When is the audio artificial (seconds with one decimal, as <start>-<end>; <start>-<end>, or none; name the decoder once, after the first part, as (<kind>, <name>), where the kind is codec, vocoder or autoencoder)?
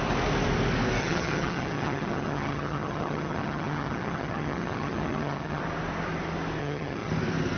1.0-5.6 (vocoder, HiFi-GAN); 6.6-7.1